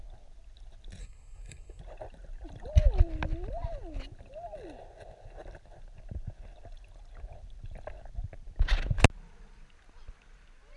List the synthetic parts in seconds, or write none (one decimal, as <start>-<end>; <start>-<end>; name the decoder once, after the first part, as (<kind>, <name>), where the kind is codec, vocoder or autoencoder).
1.0-1.8 (codec, SNAC)